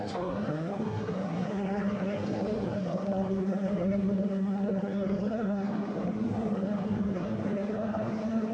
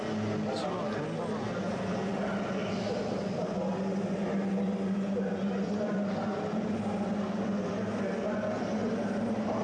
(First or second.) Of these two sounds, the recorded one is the second